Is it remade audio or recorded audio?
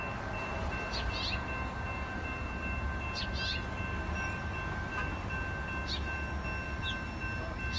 recorded